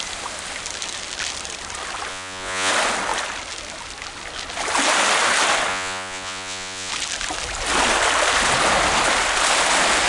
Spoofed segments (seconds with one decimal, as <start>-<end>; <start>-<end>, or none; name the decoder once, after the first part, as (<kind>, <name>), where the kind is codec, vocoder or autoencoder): 2.1-2.7 (vocoder, Vocos); 5.7-6.9